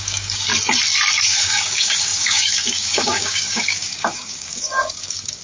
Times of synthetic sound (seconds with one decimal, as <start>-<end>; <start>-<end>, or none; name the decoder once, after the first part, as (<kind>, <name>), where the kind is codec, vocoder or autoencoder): 0.0-0.5 (codec, DAC); 1.2-5.4